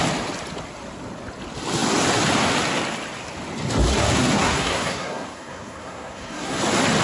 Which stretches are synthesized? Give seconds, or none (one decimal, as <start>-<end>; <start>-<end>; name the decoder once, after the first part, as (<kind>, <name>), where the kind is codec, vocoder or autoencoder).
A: 3.9-6.6 (codec, SNAC)